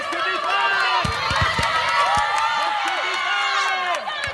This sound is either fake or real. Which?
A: real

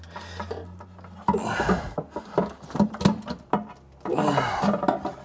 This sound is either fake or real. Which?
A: real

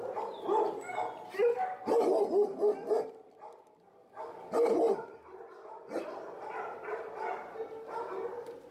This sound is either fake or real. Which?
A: real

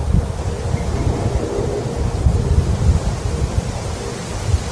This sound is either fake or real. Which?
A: real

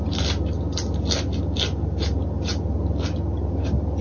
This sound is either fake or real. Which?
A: real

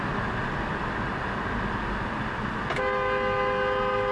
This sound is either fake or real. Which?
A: real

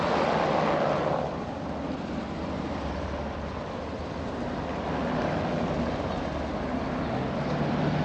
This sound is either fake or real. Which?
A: real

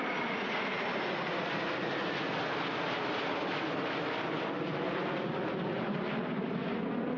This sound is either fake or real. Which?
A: real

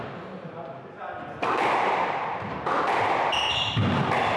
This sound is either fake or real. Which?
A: real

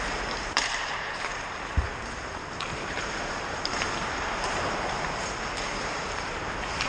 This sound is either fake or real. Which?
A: fake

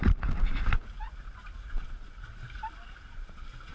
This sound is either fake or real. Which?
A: real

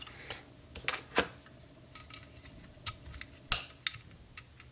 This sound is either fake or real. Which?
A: real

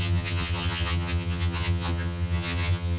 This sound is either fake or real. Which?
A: fake